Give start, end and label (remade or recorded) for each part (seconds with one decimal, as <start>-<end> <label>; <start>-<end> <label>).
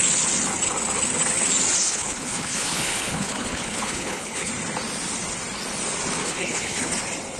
0.0-1.8 recorded; 1.8-4.5 remade; 4.5-6.2 recorded; 6.2-6.9 remade; 6.9-7.4 recorded